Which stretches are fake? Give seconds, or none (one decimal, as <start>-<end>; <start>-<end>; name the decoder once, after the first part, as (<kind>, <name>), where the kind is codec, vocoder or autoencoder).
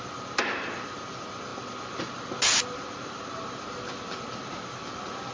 none